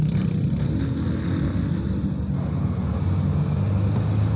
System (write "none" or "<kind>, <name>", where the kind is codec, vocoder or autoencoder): none